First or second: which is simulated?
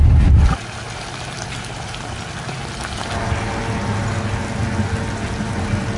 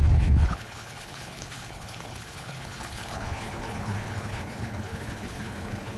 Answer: second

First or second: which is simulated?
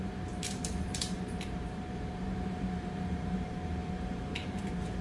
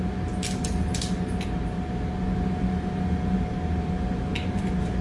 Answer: first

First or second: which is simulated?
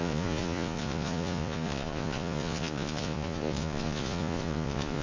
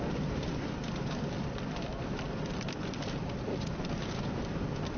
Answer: first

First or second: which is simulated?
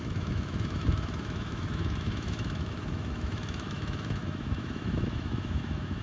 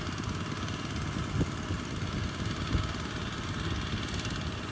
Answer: first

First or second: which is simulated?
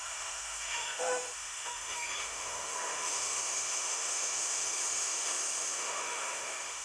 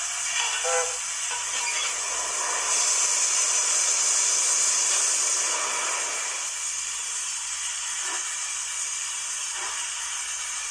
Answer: first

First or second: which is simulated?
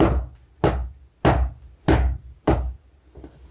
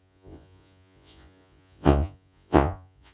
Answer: second